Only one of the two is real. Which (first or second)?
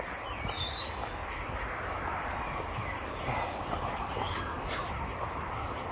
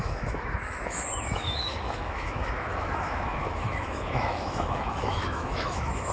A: first